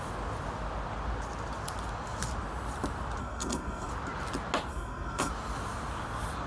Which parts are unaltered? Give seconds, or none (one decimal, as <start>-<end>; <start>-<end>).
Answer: 0.0-3.2; 3.9-4.7; 5.3-6.5